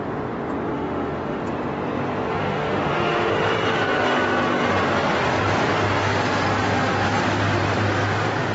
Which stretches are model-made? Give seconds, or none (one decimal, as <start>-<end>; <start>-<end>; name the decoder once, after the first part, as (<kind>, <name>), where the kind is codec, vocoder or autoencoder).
0.7-1.4 (autoencoder, DAC-VAE); 2.3-3.3